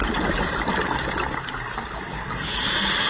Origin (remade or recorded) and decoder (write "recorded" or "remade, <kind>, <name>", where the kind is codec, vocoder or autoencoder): recorded